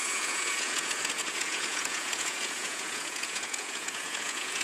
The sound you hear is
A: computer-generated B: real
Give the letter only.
A